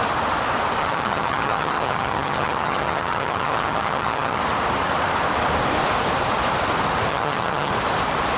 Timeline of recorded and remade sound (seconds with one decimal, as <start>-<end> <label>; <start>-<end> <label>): 0.0-0.8 recorded; 0.8-4.4 remade; 4.4-7.1 recorded; 7.1-7.7 remade; 7.7-8.4 recorded